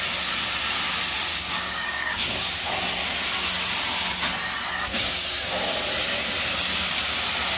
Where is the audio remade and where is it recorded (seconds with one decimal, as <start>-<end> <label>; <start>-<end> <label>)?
0.0-1.3 recorded; 1.3-2.6 remade; 2.6-4.9 recorded; 4.9-5.7 remade; 5.7-7.6 recorded